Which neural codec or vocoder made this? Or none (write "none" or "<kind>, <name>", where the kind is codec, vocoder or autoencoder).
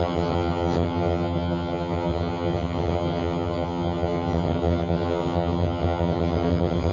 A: vocoder, HiFi-GAN